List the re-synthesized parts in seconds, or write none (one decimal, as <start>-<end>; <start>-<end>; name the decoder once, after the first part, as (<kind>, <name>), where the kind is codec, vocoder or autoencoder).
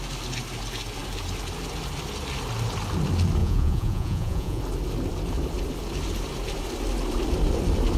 3.4-4.6 (vocoder, Vocos)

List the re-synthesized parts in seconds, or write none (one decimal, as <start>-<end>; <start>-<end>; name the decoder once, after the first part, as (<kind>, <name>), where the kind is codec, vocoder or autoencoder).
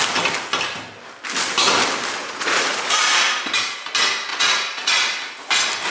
2.2-3.0 (vocoder, Vocos); 4.3-4.9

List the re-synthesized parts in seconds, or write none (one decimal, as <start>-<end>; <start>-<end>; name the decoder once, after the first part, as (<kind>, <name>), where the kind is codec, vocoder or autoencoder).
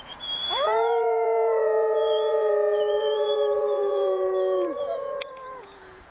0.0-6.1 (vocoder, Vocos)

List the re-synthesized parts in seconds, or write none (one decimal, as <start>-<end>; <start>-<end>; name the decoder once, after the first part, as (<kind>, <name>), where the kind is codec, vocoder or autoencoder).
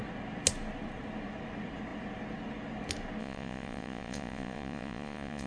3.2-5.5 (vocoder, Vocos)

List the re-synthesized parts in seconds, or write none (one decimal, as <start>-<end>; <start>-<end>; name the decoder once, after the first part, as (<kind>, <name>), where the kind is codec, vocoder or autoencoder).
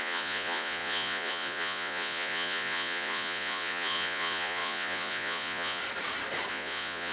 0.0-5.8 (vocoder, Vocos); 6.5-7.1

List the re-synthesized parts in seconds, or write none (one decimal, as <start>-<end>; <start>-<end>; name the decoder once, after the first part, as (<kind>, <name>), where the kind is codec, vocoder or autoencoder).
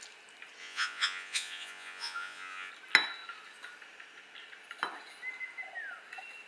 0.6-2.7 (vocoder, Vocos)